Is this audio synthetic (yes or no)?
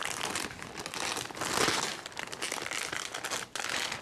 no